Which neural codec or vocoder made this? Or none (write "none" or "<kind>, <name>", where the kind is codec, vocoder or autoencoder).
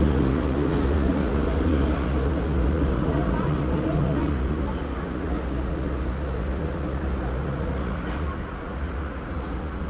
vocoder, Vocos